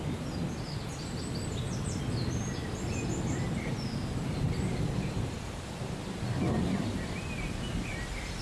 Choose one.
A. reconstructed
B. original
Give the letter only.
B